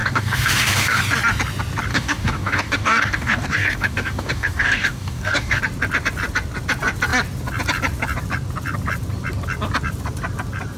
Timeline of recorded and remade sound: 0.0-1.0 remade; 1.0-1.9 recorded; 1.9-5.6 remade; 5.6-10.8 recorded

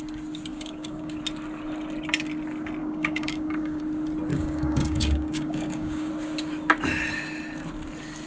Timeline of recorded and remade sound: 0.0-0.5 recorded; 0.5-1.2 remade; 1.2-2.8 recorded; 2.8-3.8 remade; 3.8-4.3 recorded; 4.3-6.1 remade; 6.1-8.3 recorded